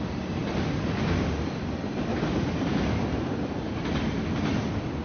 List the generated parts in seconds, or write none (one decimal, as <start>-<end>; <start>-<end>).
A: none